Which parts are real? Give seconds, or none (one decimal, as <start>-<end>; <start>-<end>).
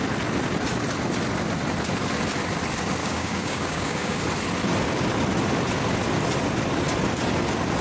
0.0-3.0; 4.2-7.8